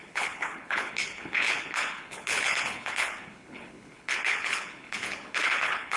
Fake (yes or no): yes